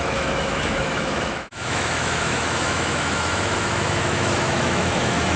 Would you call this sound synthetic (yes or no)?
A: yes